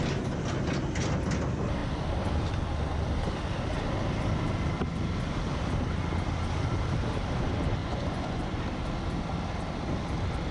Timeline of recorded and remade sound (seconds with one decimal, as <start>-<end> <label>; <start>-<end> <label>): 0.0-7.8 recorded; 7.8-8.6 remade; 8.6-10.5 recorded